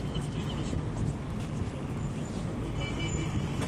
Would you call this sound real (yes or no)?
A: yes